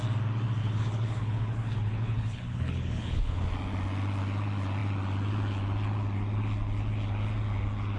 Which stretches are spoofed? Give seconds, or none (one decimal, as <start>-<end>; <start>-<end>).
0.6-3.5